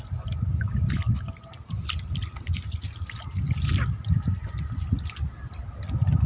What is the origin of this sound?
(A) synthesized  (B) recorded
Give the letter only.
B